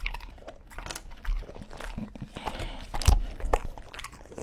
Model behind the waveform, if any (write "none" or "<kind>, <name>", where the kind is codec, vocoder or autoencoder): none